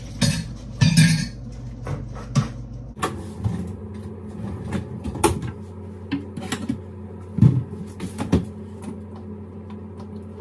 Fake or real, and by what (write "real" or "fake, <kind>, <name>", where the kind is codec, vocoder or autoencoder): real